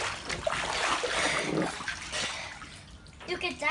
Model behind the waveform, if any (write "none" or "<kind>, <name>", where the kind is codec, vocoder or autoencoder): none